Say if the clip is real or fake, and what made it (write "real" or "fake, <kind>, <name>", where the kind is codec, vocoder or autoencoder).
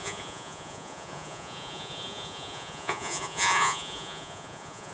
fake, vocoder, Vocos